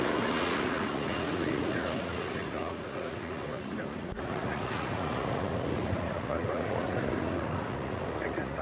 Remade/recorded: remade